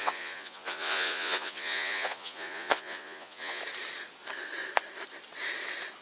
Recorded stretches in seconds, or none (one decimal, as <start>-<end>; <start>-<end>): 3.6-6.0